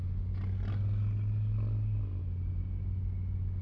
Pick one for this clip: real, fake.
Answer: real